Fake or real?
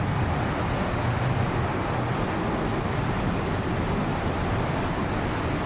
real